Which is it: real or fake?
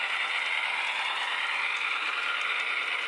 real